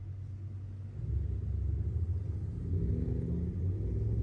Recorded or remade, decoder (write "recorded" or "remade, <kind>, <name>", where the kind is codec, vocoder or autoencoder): recorded